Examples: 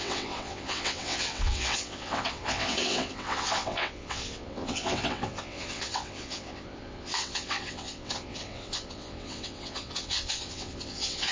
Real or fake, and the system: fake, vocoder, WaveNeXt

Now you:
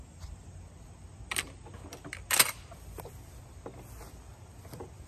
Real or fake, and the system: real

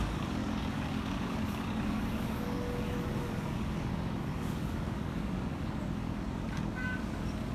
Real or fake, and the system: fake, codec, DAC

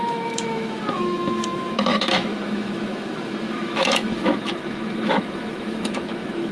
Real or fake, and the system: fake, autoencoder, DAC-VAE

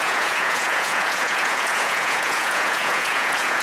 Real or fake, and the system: fake, vocoder, Vocos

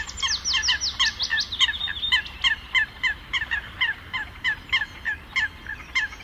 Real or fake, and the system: real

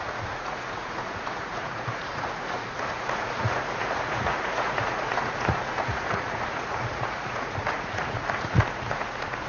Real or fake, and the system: fake, vocoder, Vocos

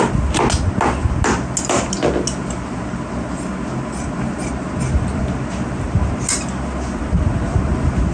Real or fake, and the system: real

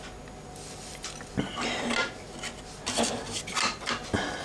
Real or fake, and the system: real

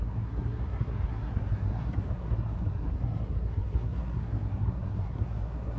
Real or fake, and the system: fake, codec, SNAC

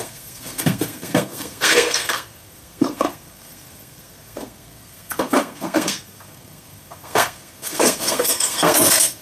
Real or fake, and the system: fake, codec, SNAC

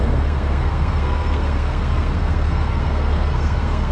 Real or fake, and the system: fake, codec, SNAC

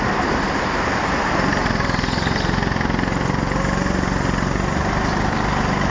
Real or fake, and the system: real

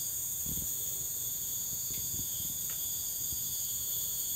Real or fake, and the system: fake, vocoder, Vocos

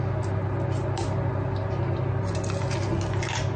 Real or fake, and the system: real